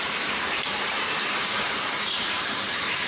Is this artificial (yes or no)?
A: yes